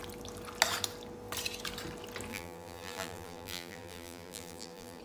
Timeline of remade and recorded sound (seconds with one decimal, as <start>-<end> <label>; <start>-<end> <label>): 0.0-2.3 recorded; 2.3-5.0 remade